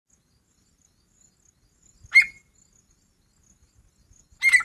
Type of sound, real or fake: real